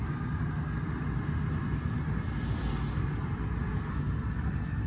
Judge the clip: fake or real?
real